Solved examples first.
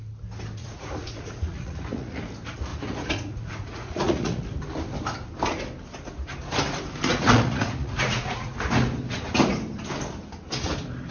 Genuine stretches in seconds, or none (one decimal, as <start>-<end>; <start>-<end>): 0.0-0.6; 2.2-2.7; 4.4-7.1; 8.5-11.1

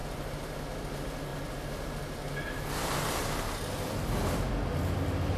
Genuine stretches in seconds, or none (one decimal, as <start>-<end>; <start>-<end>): 0.0-5.4

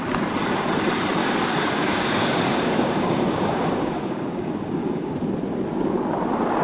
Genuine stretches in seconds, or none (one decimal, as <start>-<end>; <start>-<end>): 0.0-1.2; 5.1-6.6

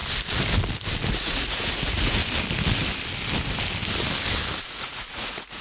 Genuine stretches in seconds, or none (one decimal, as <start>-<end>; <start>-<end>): 0.0-1.1; 2.2-4.6

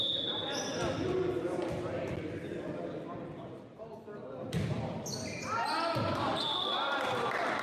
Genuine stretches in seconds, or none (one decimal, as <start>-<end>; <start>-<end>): 0.0-7.6

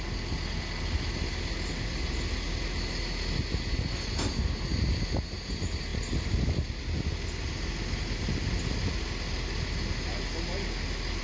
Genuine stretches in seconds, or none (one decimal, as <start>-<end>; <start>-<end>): 0.0-11.2

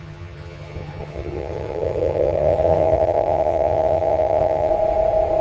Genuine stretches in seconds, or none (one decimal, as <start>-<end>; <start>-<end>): 4.7-5.4